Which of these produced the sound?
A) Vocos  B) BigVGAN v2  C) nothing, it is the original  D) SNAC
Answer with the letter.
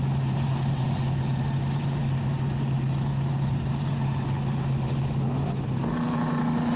C